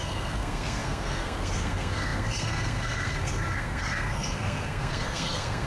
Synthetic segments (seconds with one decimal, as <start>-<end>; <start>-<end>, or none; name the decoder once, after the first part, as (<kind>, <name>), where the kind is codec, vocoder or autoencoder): 0.0-5.7 (codec, SNAC)